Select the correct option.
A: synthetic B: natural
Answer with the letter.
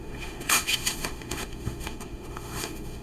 A